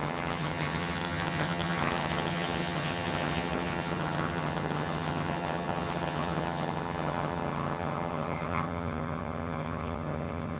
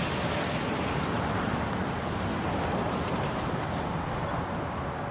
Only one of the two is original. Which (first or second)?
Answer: second